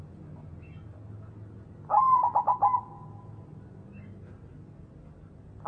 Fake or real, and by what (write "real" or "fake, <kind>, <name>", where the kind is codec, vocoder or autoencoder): real